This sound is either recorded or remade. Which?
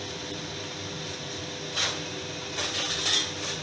recorded